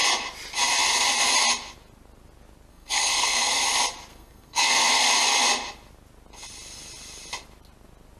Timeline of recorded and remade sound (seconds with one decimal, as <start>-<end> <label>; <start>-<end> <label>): 0.0-2.7 recorded; 2.7-3.6 remade; 3.6-4.1 recorded; 4.1-5.1 remade; 5.1-8.2 recorded